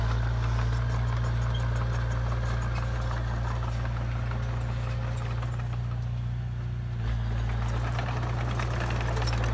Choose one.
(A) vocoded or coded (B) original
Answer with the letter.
B